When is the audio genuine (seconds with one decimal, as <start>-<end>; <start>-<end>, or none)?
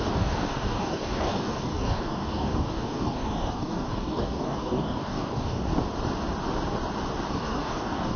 5.7-7.3